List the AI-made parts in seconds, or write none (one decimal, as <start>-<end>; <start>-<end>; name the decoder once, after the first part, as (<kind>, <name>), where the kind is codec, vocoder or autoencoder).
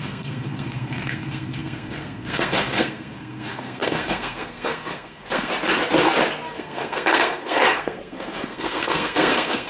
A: 0.0-5.5 (codec, SNAC); 6.6-9.7